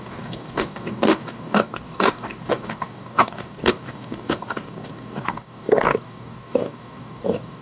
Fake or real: fake